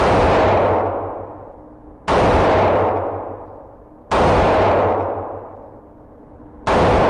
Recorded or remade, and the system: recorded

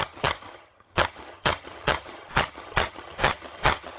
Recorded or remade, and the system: remade, vocoder, HiFi-GAN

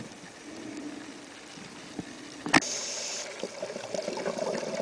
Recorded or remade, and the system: recorded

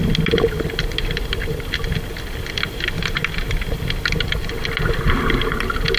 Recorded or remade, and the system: recorded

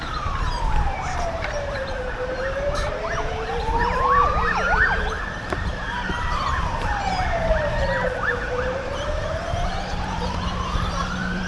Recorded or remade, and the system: remade, vocoder, BigVGAN v2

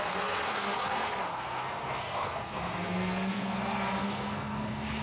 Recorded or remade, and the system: remade, codec, SNAC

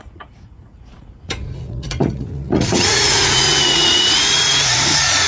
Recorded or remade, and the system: remade, vocoder, Vocos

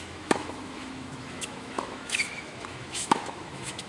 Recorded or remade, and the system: remade, autoencoder, DAC-VAE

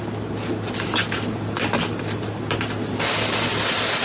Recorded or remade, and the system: recorded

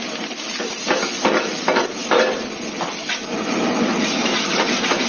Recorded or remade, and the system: recorded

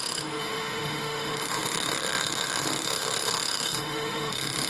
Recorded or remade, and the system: remade, autoencoder, DAC-VAE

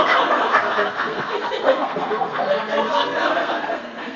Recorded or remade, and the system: remade, codec, SNAC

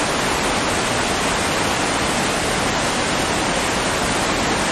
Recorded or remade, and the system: recorded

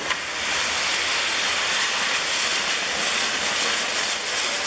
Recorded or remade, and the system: recorded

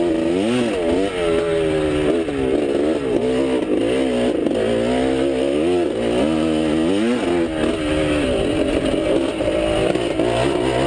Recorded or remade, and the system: recorded